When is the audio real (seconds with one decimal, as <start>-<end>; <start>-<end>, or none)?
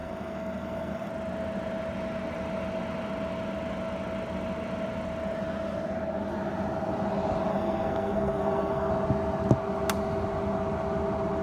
1.1-7.5; 8.9-11.4